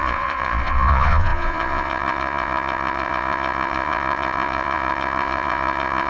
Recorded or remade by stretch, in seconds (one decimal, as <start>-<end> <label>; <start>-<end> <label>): 0.0-6.1 remade